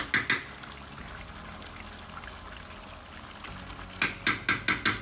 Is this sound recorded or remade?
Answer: recorded